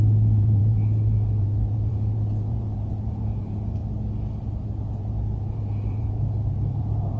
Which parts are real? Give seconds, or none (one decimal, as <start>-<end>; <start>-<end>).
3.8-5.0